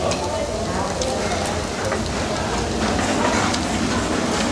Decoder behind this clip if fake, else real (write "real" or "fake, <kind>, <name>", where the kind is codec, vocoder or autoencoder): real